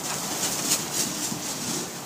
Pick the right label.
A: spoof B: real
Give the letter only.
B